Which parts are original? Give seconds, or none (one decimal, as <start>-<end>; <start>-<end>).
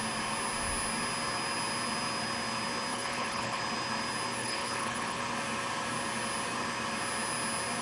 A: 0.0-2.9; 3.6-4.4; 5.2-7.8